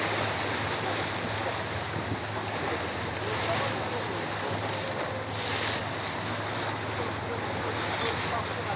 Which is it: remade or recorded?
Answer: recorded